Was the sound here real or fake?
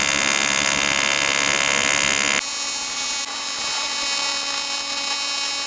real